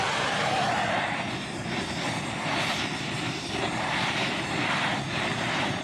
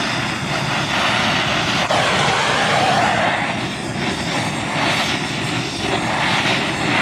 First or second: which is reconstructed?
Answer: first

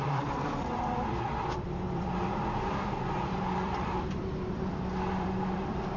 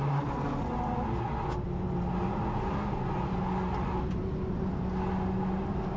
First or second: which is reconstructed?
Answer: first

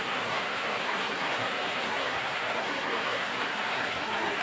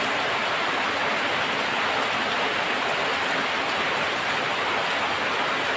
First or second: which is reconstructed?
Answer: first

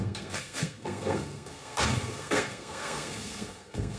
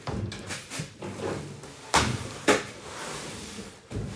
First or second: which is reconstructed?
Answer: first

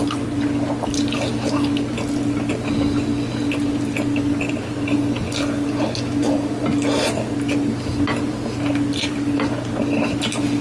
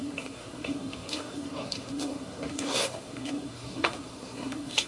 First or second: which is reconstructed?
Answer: second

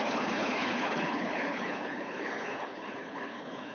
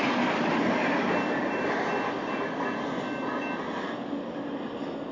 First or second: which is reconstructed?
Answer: first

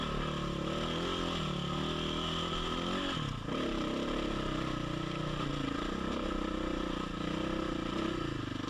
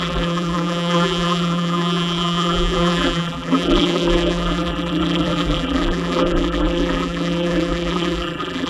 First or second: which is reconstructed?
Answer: second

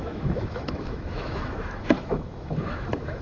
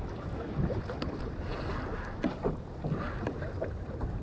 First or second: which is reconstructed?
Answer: first